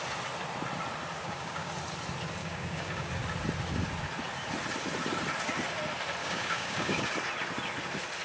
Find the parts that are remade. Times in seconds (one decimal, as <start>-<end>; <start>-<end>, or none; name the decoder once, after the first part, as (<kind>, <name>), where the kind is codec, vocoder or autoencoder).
1.2-1.7 (codec, DAC); 2.4-3.1; 6.2-7.0